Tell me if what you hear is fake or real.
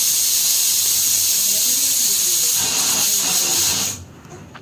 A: real